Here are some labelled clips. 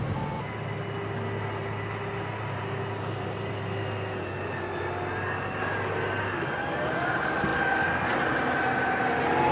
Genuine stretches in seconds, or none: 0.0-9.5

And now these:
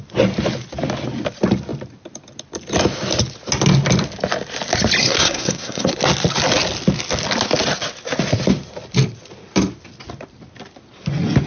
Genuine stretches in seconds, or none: 0.0-5.0; 5.9-11.5

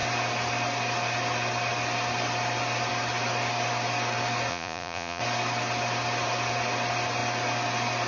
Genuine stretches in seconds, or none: 0.0-4.5; 5.2-8.1

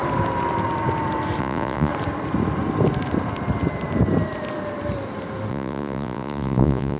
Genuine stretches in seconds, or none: 0.0-1.4; 1.9-5.5